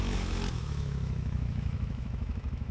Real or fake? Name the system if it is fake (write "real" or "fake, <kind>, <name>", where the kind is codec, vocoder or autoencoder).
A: fake, autoencoder, DAC-VAE